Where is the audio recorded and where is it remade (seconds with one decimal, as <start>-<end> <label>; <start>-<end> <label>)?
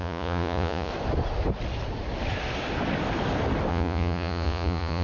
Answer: 0.0-0.9 remade; 0.9-3.7 recorded; 3.7-5.0 remade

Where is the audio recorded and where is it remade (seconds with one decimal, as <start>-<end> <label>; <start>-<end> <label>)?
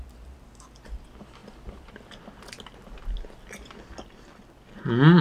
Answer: 0.0-5.2 recorded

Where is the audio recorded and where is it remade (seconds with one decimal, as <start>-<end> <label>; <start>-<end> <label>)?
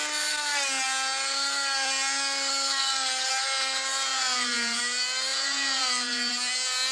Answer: 0.0-4.1 recorded; 4.1-4.8 remade; 4.8-5.3 recorded; 5.3-6.3 remade; 6.3-6.9 recorded